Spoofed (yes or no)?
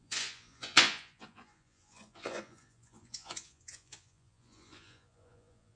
yes